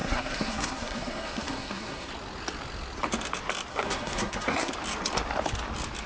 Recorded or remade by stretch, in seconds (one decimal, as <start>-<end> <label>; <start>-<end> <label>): 0.0-2.1 remade; 2.1-3.7 recorded; 3.7-4.7 remade; 4.7-6.1 recorded